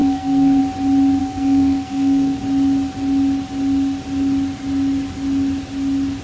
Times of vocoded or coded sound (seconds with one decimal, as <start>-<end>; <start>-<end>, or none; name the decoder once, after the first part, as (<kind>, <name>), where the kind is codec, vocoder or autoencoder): 0.0-0.6 (codec, SNAC); 1.2-2.4